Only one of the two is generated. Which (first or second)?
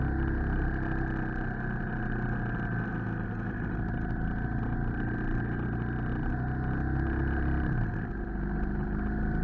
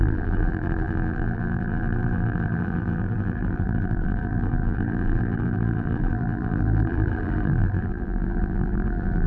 second